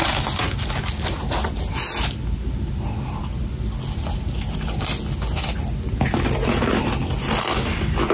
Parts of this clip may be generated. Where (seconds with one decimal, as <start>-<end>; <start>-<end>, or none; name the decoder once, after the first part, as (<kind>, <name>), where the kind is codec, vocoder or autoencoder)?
none